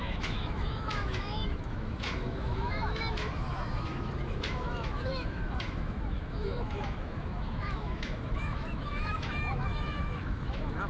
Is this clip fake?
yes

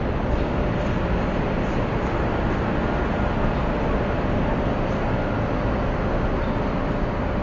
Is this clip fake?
no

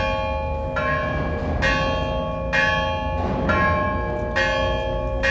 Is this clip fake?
no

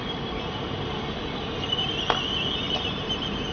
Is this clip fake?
no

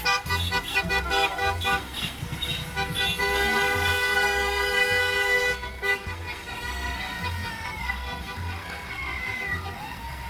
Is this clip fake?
yes